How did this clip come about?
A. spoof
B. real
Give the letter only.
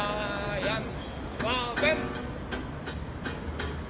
B